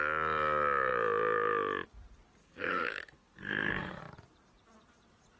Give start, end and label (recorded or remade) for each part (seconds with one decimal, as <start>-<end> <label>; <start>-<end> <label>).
0.0-2.4 recorded; 2.4-4.0 remade; 4.0-5.4 recorded